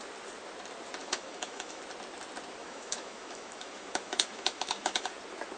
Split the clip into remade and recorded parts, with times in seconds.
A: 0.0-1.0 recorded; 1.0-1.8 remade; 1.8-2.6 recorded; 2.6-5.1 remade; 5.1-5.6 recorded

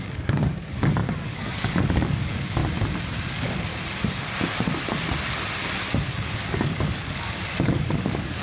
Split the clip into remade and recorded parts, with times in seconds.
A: 0.0-2.6 remade; 2.6-3.3 recorded; 3.3-3.7 remade; 3.7-6.5 recorded; 6.5-8.4 remade

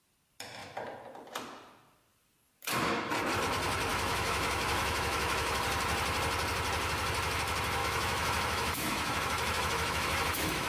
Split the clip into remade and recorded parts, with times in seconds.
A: 0.0-3.9 recorded; 3.9-5.6 remade; 5.6-7.8 recorded; 7.8-10.7 remade

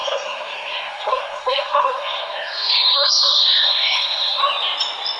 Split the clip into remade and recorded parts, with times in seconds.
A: 0.0-4.4 remade; 4.4-5.2 recorded

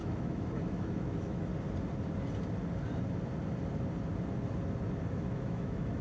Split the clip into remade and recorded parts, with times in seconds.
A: 0.0-1.5 remade; 1.5-5.1 recorded; 5.1-6.0 remade